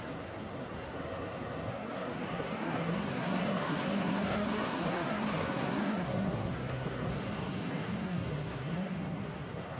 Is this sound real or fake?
fake